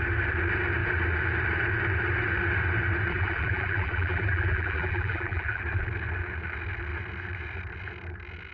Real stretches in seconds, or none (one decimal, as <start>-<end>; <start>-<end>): 0.0-3.1; 5.6-8.5